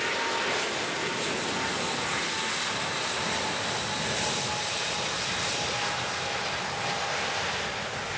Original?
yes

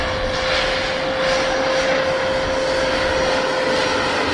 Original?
yes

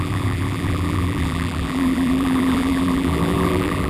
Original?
no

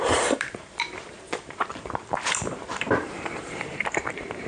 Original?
no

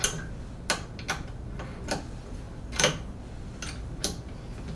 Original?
yes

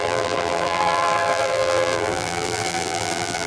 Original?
no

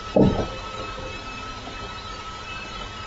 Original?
yes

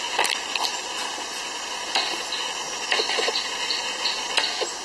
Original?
yes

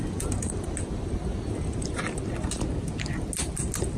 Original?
yes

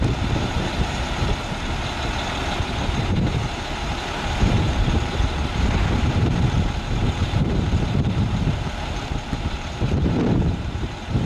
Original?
no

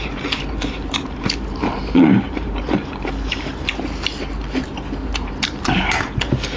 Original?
no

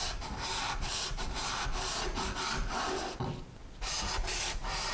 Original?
no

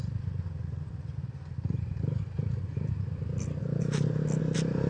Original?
yes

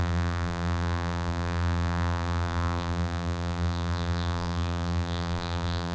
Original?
no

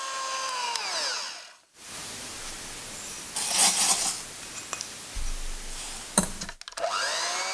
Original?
yes